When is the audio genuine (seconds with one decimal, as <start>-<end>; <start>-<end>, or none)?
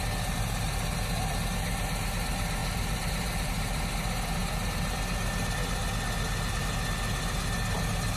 0.0-2.6; 3.5-8.2